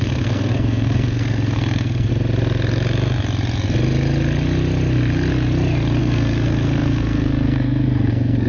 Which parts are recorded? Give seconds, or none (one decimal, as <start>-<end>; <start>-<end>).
2.1-6.0